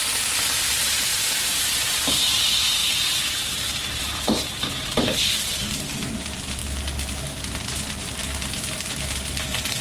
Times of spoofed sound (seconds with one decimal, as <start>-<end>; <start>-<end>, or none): 0.0-1.1; 1.7-6.6; 7.2-9.8